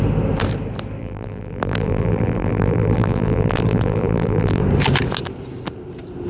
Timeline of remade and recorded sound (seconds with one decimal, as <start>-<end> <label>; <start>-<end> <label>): 0.0-1.0 recorded; 1.0-4.6 remade; 4.6-6.3 recorded